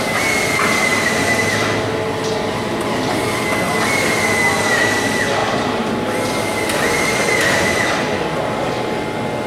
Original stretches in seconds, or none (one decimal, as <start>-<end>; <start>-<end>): 0.0-0.9; 1.5-5.4; 5.9-9.5